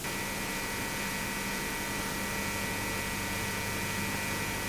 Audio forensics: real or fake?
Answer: real